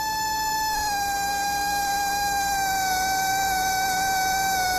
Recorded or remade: remade